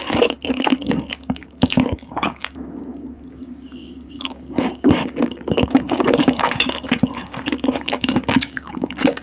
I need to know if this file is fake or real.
fake